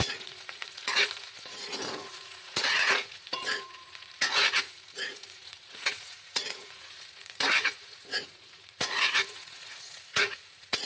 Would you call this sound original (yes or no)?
no